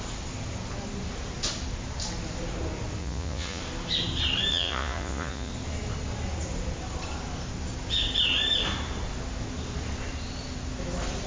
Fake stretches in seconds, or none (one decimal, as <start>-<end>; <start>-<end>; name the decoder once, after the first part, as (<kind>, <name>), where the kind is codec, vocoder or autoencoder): 3.0-3.6 (vocoder, Vocos); 4.5-5.5